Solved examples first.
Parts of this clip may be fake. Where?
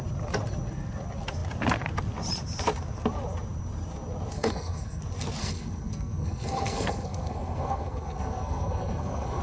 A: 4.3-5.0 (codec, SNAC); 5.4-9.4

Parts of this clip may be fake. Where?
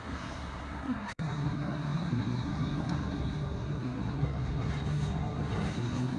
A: 0.0-6.2 (codec, SNAC)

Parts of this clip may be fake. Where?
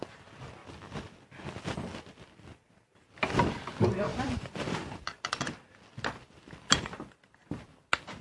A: 4.1-5.0 (vocoder, BigVGAN v2)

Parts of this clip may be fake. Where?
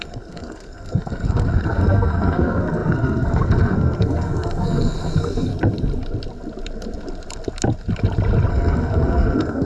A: 0.0-5.5 (codec, SNAC); 8.5-9.7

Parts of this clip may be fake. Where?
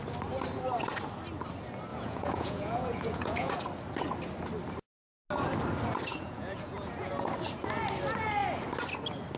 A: 1.9-3.5 (vocoder, Vocos); 6.1-7.1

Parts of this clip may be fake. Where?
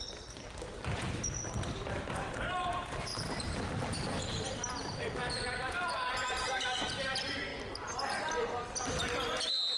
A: 0.0-7.5 (vocoder, BigVGAN v2)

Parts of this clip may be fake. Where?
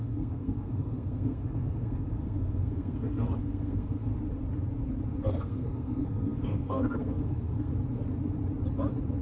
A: 0.0-4.1 (codec, SNAC); 5.2-7.7